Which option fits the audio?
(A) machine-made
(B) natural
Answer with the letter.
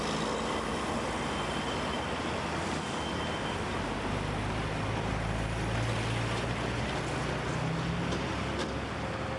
B